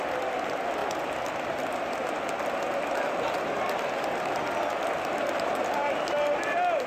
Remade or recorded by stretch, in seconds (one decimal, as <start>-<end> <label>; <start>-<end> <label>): 0.0-6.9 recorded